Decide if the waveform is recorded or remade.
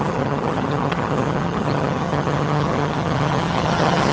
remade